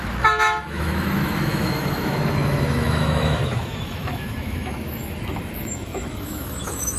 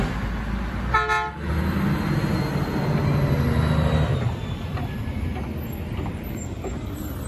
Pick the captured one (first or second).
second